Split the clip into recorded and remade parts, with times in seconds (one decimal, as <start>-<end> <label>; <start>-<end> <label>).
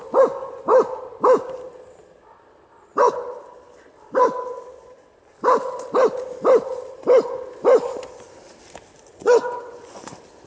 0.0-9.1 recorded; 9.1-10.1 remade; 10.1-10.5 recorded